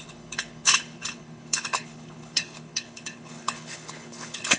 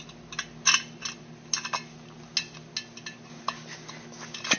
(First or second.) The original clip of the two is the second